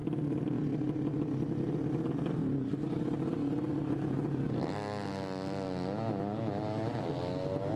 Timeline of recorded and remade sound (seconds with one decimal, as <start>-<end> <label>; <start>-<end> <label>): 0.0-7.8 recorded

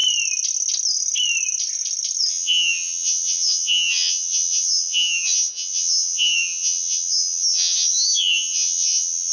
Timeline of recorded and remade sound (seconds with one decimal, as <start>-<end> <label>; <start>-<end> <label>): 0.0-2.3 recorded; 2.3-9.3 remade

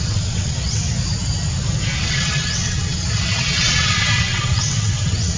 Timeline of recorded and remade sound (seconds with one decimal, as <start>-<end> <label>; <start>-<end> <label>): 0.0-0.8 remade; 0.8-2.0 recorded; 2.0-5.4 remade

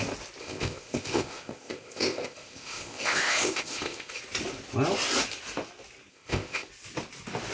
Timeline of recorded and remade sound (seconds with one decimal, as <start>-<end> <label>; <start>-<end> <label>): 0.0-0.4 recorded; 0.4-4.2 remade; 4.2-6.1 recorded; 6.1-6.7 remade; 6.7-7.5 recorded